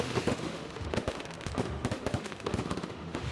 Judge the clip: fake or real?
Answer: fake